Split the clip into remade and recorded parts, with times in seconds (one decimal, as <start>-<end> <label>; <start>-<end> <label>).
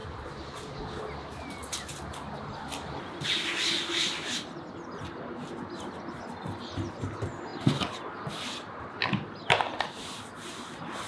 0.0-1.0 remade; 1.0-1.9 recorded; 1.9-5.3 remade; 5.3-11.1 recorded